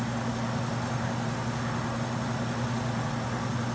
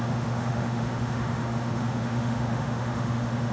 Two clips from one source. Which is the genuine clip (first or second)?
first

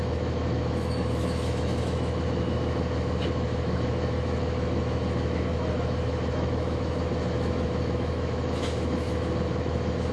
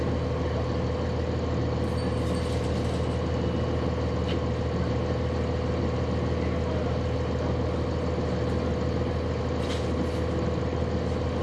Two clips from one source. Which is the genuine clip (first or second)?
second